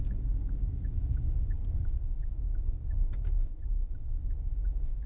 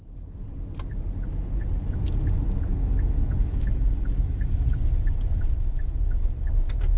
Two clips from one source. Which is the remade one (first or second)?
first